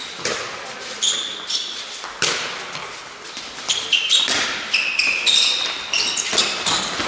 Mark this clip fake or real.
real